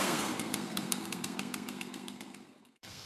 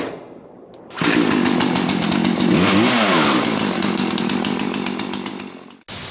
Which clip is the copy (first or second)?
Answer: first